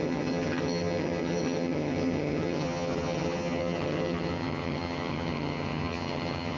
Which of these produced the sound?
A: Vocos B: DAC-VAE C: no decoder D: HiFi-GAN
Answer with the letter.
D